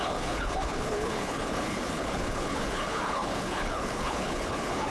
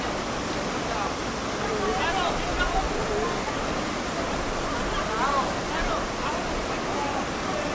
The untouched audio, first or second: second